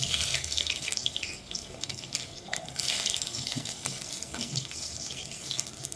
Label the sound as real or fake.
fake